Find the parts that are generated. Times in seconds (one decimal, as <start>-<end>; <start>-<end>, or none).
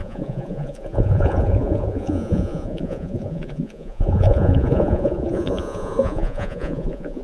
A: 0.0-7.2